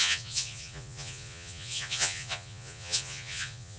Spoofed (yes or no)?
yes